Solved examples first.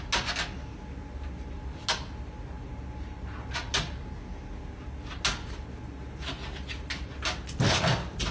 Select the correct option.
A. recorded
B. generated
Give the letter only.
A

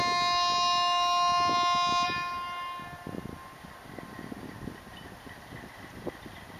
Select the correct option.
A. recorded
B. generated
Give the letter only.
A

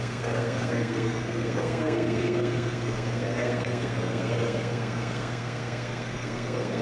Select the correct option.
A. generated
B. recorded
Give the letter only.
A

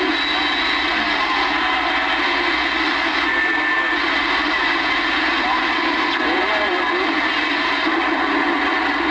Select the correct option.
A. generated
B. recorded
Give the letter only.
B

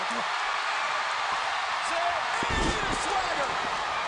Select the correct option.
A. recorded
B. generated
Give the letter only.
A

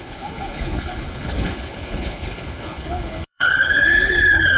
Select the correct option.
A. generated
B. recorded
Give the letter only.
A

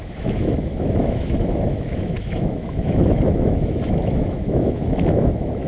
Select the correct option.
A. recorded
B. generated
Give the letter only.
B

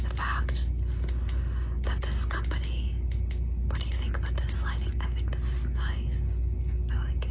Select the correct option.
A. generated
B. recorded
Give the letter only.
B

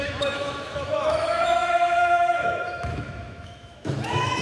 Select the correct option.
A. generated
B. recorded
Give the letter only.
A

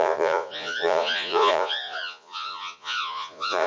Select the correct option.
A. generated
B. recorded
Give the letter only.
A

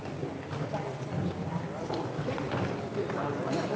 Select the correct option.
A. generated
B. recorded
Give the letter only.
B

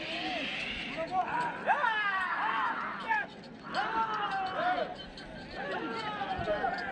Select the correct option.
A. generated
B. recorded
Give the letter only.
B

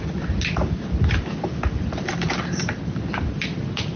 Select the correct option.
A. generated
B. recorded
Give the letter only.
B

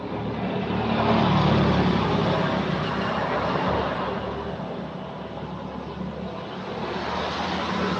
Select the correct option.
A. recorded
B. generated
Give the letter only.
A